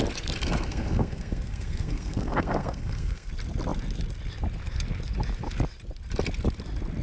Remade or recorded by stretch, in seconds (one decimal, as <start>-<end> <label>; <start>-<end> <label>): 0.0-0.4 recorded; 0.4-3.3 remade; 3.3-7.0 recorded